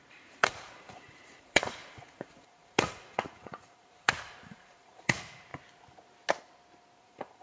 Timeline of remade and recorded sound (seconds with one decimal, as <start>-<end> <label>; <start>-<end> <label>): 0.0-5.5 remade; 5.5-7.0 recorded; 7.0-7.4 remade